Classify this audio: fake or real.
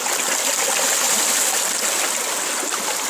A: real